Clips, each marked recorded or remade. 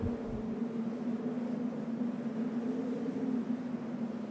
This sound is recorded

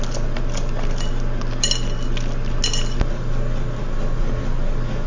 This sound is recorded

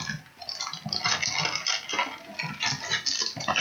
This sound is recorded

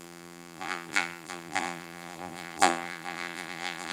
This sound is remade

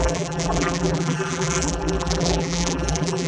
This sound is remade